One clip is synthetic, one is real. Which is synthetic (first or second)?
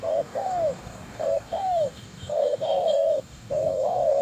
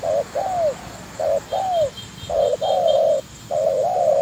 first